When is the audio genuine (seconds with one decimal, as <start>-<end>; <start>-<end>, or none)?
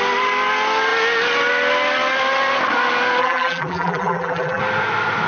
0.0-3.2; 4.6-5.3